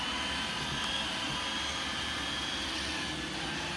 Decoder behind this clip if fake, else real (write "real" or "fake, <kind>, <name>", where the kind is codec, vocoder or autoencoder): real